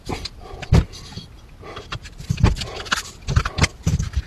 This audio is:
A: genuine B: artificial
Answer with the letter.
A